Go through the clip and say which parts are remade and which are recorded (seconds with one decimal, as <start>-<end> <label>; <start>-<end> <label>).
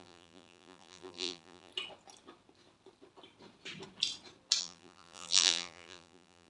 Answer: 0.0-1.7 remade; 1.7-4.6 recorded; 4.6-6.5 remade